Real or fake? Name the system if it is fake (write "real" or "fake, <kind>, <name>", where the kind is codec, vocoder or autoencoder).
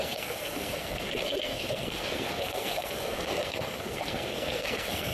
fake, codec, SNAC